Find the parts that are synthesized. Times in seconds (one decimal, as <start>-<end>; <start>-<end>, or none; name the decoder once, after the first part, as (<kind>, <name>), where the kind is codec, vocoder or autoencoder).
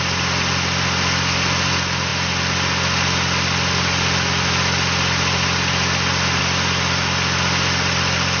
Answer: none